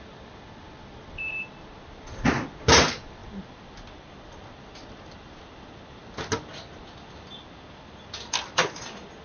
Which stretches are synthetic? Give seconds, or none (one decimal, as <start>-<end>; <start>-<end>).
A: none